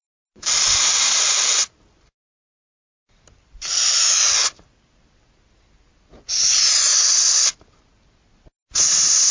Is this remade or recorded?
recorded